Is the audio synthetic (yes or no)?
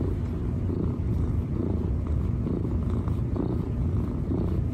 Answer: no